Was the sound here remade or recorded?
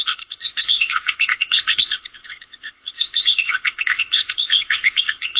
remade